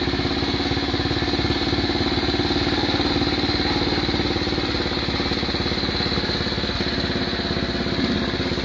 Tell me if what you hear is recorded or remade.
recorded